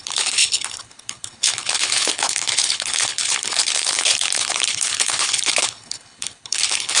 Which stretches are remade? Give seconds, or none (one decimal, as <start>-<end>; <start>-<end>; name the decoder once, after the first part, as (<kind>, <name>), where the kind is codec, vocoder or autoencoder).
0.0-7.0 (codec, HILCodec)